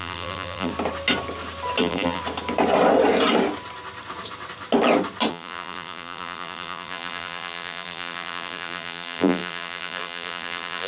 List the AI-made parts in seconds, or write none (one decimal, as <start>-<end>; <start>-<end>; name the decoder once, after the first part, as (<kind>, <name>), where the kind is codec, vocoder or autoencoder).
0.0-0.7 (vocoder, BigVGAN v2); 1.8-2.2; 5.3-10.9